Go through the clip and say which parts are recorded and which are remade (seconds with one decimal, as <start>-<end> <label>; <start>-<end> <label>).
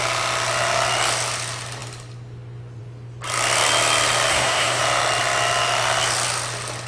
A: 0.0-4.3 recorded; 4.3-4.8 remade; 4.8-6.9 recorded